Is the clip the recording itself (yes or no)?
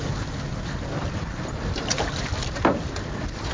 yes